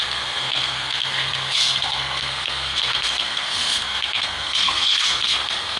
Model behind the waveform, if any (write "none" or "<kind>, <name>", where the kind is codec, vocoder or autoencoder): codec, SNAC